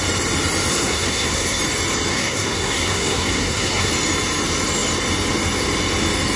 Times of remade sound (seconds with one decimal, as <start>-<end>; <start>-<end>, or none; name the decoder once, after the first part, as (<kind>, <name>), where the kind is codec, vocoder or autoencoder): 0.7-1.6 (codec, SNAC); 2.1-3.9